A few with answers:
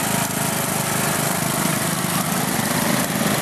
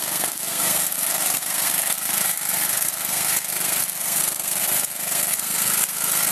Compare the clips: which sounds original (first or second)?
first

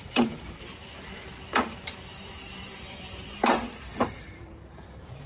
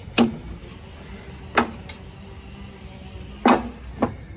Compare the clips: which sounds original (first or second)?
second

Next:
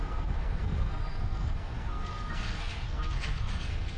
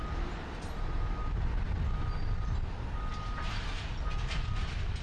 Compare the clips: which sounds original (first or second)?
second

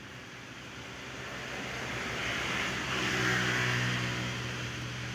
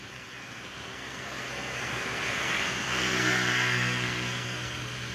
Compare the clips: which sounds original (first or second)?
first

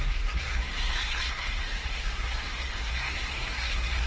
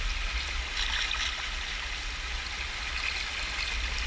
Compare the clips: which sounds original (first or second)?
second